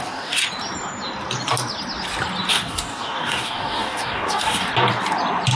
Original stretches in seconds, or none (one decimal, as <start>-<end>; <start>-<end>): 0.4-2.5; 4.7-5.6